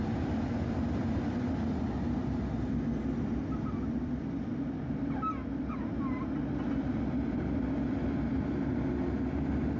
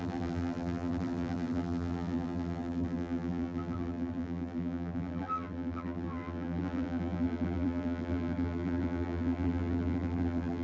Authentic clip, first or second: first